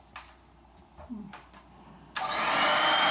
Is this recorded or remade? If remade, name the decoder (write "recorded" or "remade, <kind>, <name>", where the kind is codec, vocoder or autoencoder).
recorded